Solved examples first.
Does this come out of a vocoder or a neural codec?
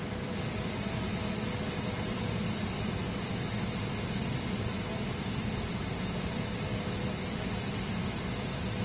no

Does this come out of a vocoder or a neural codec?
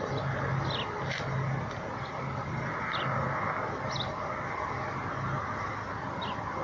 no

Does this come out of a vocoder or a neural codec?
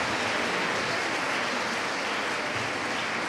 no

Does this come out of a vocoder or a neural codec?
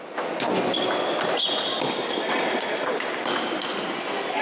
no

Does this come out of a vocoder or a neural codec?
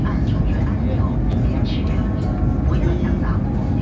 no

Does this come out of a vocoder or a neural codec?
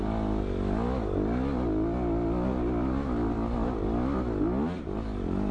no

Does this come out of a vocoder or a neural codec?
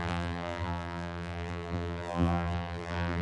yes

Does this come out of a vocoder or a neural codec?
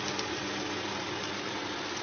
no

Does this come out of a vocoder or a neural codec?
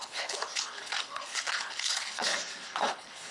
yes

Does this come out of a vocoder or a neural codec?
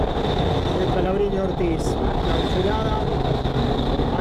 no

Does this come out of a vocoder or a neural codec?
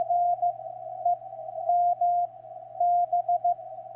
no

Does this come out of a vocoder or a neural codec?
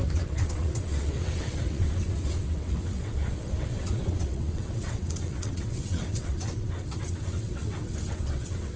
yes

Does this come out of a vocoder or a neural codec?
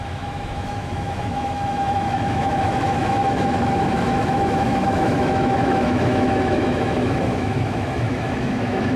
yes